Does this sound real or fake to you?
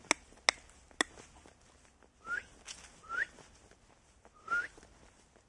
real